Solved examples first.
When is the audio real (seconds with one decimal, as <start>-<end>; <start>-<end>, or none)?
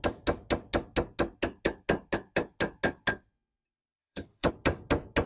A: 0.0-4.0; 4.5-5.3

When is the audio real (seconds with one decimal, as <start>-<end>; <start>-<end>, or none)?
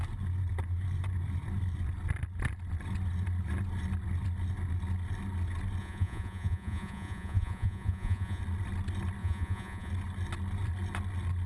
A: 0.0-5.8; 8.4-9.2; 9.9-11.5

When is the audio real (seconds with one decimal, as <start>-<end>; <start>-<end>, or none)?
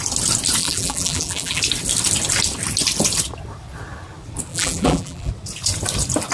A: 0.0-0.6; 1.6-4.5; 5.3-6.3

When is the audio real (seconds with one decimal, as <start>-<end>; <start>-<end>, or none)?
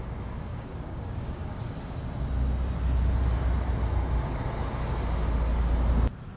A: 0.0-0.5; 1.6-6.4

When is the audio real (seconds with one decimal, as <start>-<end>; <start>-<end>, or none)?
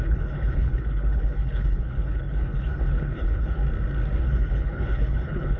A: 3.6-4.2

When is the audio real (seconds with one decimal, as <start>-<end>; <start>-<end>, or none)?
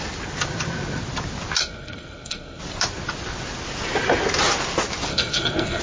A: 0.0-1.6; 2.6-5.1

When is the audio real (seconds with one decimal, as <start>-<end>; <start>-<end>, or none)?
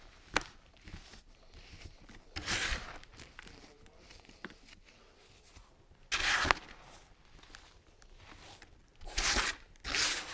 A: 0.0-2.4; 4.6-8.8; 9.5-10.3